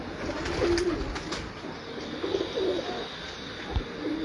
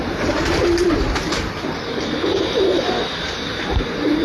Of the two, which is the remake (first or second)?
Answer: second